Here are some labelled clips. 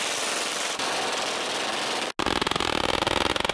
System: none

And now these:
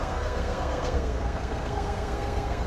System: codec, SNAC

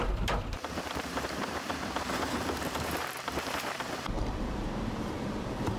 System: vocoder, BigVGAN v2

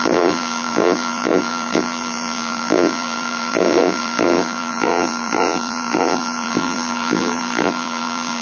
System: vocoder, BigVGAN v2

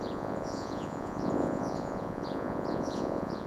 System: vocoder, Vocos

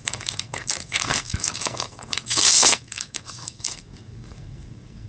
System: codec, SNAC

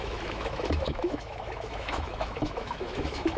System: autoencoder, DAC-VAE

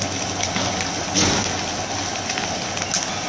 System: none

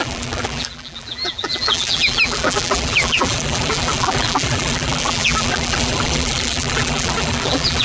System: vocoder, BigVGAN v2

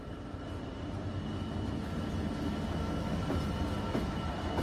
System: none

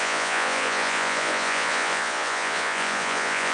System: vocoder, Vocos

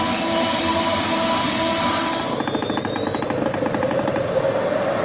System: none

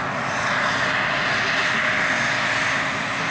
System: none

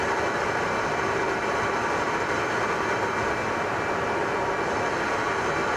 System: none